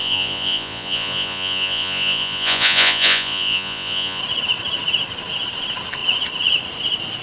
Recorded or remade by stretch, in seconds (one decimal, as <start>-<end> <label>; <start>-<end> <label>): 0.0-4.2 remade; 4.2-7.2 recorded